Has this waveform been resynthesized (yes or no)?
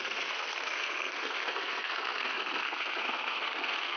yes